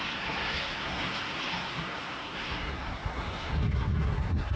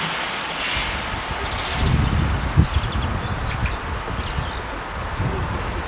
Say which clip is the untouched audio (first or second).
second